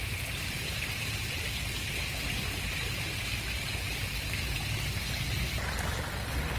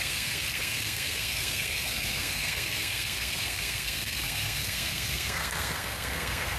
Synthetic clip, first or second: second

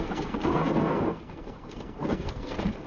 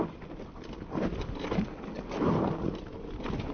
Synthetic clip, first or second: first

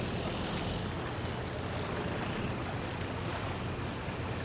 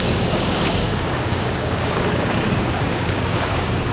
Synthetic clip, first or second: second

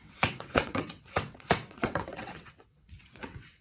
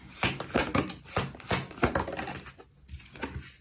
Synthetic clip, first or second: first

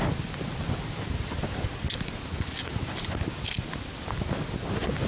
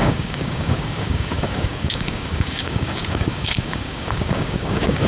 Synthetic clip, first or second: second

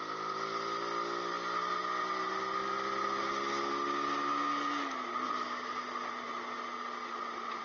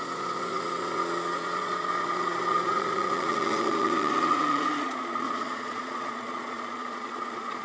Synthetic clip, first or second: second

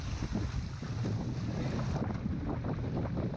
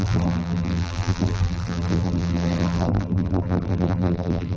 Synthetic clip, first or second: second